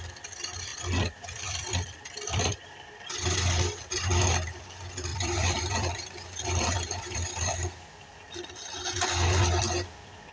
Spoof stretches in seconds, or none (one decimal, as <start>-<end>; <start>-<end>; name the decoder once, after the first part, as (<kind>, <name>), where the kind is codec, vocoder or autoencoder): 0.7-2.9 (vocoder, BigVGAN v2); 5.1-8.2

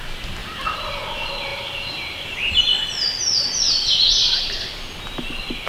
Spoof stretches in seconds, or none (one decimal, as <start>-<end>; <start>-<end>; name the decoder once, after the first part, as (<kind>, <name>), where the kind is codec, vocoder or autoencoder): 0.4-1.0 (vocoder, BigVGAN v2)

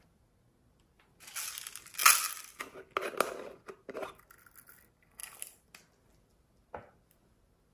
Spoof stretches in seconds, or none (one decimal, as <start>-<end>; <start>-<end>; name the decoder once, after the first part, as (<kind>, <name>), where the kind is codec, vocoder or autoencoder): none

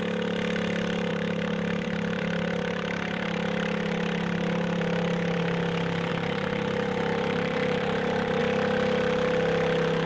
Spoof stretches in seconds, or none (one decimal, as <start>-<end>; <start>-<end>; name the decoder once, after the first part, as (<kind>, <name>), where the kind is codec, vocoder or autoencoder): 1.1-5.4 (vocoder, BigVGAN v2); 6.1-8.4